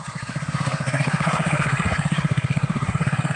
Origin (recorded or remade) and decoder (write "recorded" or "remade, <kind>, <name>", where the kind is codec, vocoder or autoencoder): remade, codec, SNAC